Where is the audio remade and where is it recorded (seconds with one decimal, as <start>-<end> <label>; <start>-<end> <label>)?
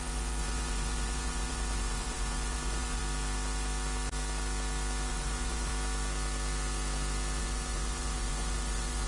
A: 0.0-3.0 remade; 3.0-5.1 recorded; 5.1-5.7 remade; 5.7-7.4 recorded; 7.4-9.1 remade